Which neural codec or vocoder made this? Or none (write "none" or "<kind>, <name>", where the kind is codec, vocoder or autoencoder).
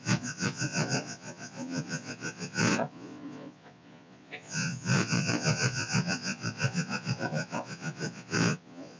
vocoder, Vocos